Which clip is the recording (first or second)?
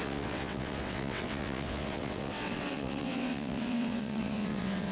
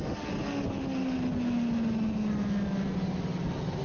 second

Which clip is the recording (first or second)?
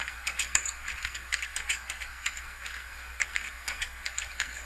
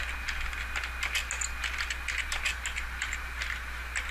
second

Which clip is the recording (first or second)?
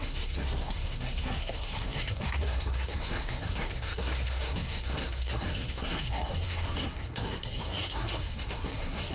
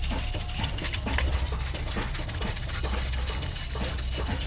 second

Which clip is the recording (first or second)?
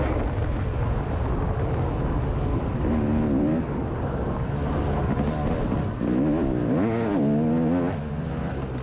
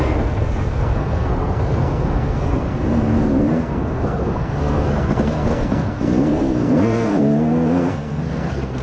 first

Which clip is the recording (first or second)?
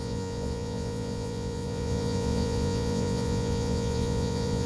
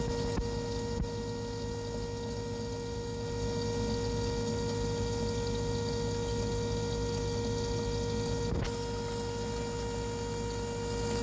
second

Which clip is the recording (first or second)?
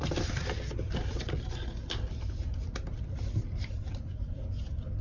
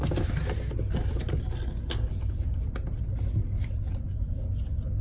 second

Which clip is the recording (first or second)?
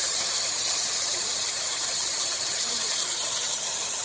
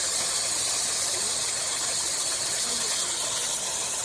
second